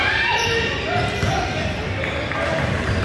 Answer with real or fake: fake